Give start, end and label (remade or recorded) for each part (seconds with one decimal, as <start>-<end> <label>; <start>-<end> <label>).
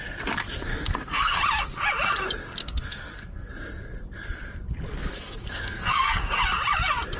0.0-0.7 recorded; 0.7-1.4 remade; 1.4-2.6 recorded; 2.6-3.5 remade; 3.5-4.9 recorded; 4.9-6.4 remade; 6.4-7.2 recorded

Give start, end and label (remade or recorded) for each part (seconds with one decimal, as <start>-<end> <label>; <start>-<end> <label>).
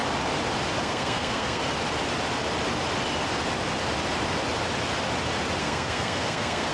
0.0-0.8 recorded; 0.8-1.6 remade; 1.6-5.6 recorded; 5.6-6.7 remade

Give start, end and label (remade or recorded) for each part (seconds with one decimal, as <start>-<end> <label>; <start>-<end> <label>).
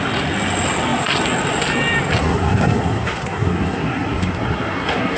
0.0-2.2 recorded; 2.2-5.2 remade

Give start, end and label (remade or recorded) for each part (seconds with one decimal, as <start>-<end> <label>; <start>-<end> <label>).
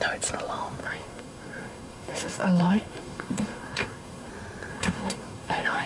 0.0-0.8 recorded; 0.8-4.3 remade; 4.3-4.7 recorded; 4.7-5.9 remade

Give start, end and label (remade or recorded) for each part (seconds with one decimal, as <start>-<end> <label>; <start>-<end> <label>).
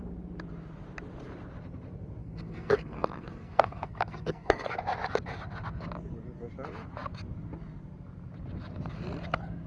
0.0-2.2 recorded; 2.2-4.8 remade; 4.8-9.7 recorded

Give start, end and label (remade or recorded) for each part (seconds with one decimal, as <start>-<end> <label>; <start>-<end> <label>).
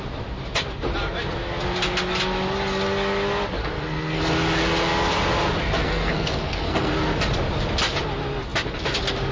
0.0-3.6 recorded; 3.6-4.2 remade; 4.2-5.8 recorded; 5.8-6.9 remade; 6.9-9.3 recorded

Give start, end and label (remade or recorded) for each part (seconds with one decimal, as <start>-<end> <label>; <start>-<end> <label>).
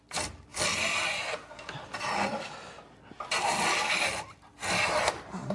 0.0-5.5 recorded